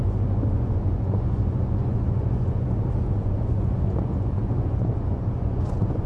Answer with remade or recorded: remade